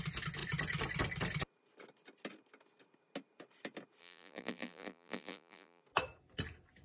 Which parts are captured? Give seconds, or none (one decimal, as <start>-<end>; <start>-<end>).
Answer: 0.0-4.0; 5.8-6.8